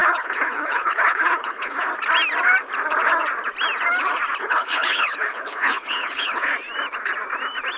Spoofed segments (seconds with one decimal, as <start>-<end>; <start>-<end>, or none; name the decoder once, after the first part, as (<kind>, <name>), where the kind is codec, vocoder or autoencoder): 0.0-1.9 (codec, HILCodec); 4.4-6.5